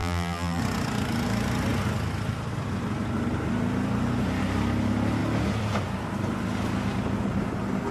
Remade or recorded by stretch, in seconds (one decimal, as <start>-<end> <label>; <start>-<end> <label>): 0.0-0.6 remade; 0.6-7.9 recorded